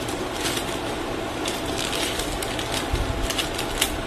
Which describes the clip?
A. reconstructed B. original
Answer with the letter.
B